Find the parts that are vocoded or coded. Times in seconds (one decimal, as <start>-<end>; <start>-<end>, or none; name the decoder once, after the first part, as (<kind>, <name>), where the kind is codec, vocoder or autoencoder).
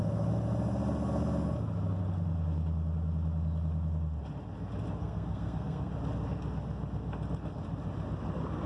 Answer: 5.0-5.9 (codec, SNAC)